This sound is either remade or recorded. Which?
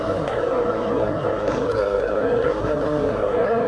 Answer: remade